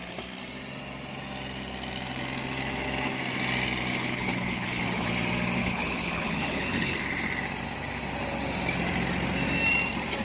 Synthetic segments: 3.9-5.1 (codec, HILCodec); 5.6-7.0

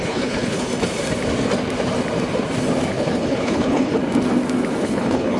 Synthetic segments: 0.0-0.7 (codec, HILCodec); 2.9-4.0; 4.8-5.4